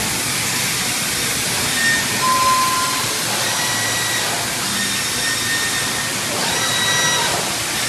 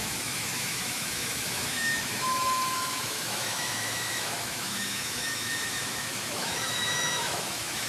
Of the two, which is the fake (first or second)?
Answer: second